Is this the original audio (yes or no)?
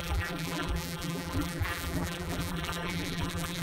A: no